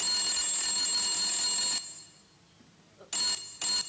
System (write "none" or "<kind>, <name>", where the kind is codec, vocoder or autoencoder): none